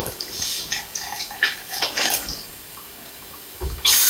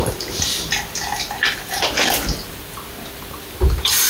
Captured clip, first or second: second